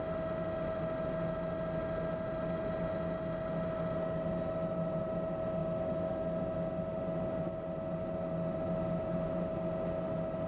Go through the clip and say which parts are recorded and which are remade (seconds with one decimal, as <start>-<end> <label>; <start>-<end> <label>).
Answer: 0.0-10.5 recorded